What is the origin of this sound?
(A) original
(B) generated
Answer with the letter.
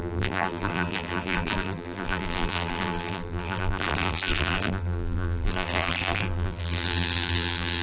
B